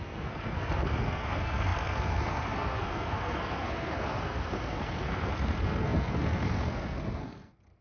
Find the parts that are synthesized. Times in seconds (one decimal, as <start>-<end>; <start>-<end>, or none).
0.0-7.8